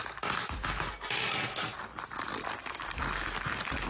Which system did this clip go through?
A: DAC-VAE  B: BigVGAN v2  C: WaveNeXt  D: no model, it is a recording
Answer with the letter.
D